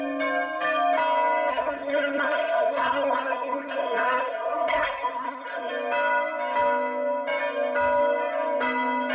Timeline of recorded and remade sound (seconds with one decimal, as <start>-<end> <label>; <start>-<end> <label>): 0.0-1.5 recorded; 1.5-5.7 remade; 5.7-9.1 recorded